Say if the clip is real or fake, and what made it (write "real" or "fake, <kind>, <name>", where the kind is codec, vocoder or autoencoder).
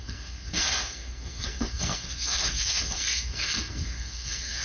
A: fake, codec, SNAC